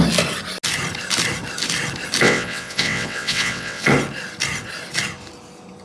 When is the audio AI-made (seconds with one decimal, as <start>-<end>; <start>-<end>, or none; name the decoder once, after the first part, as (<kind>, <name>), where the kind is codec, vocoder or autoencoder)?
2.2-3.9 (vocoder, WaveNeXt)